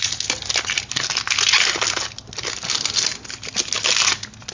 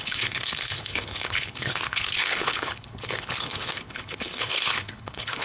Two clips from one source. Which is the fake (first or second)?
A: second